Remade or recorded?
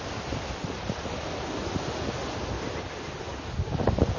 recorded